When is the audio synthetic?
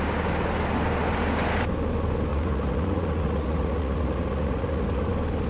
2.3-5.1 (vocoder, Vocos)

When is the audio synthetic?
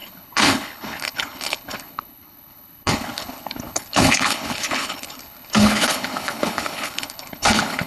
0.0-7.9 (codec, HILCodec)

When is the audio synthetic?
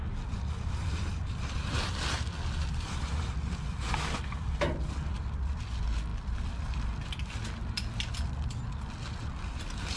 none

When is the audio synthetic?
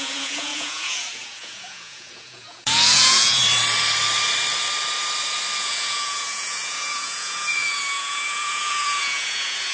0.0-3.4 (vocoder, Vocos); 5.6-9.7